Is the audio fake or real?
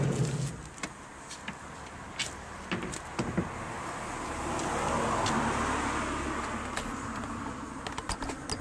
real